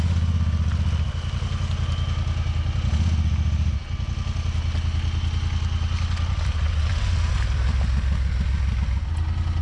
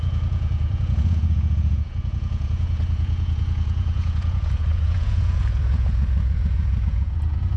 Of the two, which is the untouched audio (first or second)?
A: first